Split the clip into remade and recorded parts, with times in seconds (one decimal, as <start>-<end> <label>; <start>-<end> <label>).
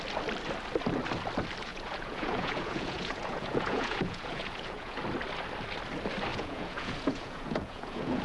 0.0-1.7 recorded; 1.7-5.0 remade; 5.0-6.3 recorded; 6.3-8.2 remade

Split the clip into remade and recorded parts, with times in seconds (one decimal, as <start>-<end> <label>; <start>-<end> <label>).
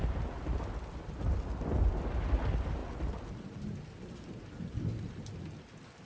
0.0-6.1 recorded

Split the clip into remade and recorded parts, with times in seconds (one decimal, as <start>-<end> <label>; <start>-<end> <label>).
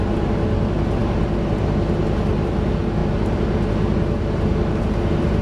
0.0-5.4 recorded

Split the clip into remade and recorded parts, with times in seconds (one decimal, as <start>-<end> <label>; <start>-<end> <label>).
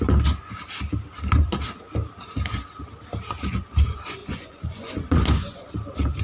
0.0-4.2 recorded; 4.2-5.7 remade; 5.7-6.2 recorded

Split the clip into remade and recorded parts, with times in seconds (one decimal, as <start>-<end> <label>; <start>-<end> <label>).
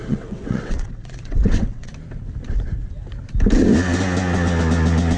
0.0-1.9 remade; 1.9-5.2 recorded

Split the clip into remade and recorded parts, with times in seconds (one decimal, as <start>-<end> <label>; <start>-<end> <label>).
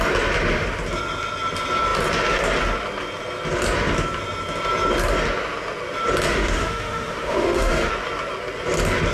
0.0-6.3 recorded; 6.3-7.9 remade; 7.9-9.1 recorded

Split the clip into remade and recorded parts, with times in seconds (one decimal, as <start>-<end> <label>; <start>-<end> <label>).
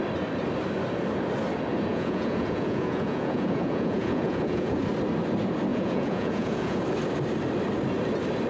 0.0-1.9 recorded; 1.9-4.8 remade; 4.8-5.7 recorded; 5.7-6.8 remade; 6.8-8.5 recorded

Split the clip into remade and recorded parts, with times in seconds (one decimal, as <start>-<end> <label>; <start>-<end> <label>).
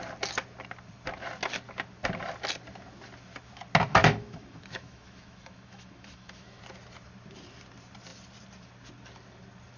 0.0-4.0 recorded; 4.0-6.6 remade; 6.6-9.8 recorded